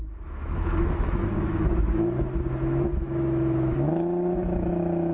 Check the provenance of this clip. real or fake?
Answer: fake